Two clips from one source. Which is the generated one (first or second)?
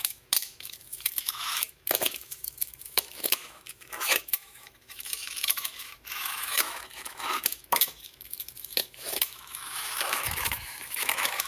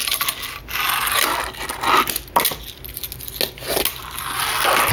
first